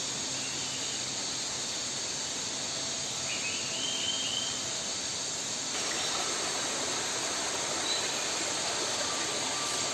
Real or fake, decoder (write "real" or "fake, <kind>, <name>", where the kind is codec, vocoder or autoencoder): real